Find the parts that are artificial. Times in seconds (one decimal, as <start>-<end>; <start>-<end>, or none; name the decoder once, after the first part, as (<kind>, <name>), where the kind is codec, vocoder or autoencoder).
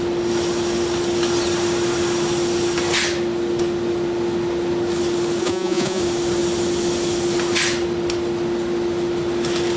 5.4-6.0 (vocoder, Vocos)